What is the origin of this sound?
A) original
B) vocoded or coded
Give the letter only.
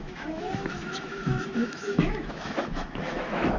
B